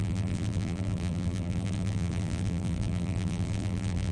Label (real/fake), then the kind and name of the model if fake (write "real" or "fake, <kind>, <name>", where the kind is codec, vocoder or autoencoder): fake, vocoder, BigVGAN v2